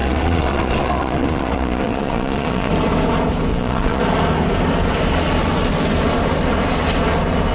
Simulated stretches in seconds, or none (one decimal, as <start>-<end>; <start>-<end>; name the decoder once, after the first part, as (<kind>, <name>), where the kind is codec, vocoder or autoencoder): 0.0-2.7 (vocoder, Vocos); 3.5-4.0